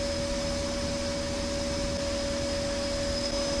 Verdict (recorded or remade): recorded